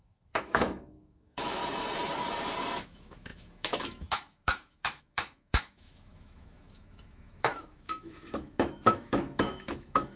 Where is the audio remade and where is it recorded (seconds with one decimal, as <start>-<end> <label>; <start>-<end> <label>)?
0.0-1.6 remade; 1.6-2.8 recorded; 2.8-10.2 remade